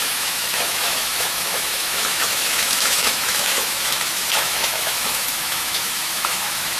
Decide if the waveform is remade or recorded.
remade